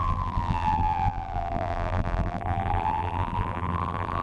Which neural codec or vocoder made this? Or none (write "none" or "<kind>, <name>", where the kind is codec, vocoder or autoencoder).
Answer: vocoder, BigVGAN v2